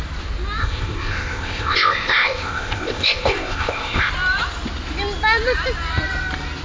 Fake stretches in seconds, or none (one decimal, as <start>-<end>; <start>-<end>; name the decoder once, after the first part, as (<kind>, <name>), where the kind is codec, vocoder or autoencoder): 0.6-4.1 (codec, ZipCodec)